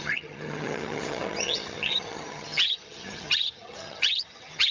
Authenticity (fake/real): fake